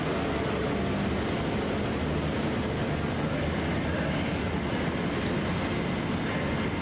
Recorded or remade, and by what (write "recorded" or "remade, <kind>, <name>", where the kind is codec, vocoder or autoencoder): recorded